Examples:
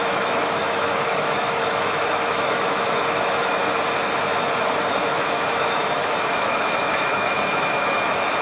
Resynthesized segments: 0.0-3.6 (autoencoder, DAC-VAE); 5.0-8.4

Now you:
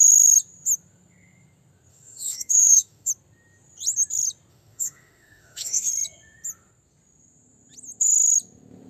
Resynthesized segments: 1.9-3.1 (autoencoder, DAC-VAE); 4.5-5.9

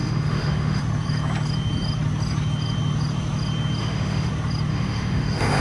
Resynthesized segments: 0.0-0.8 (autoencoder, DAC-VAE); 3.8-4.3; 4.7-5.6